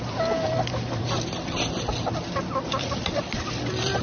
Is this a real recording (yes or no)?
no